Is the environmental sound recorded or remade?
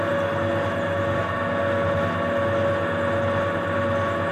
recorded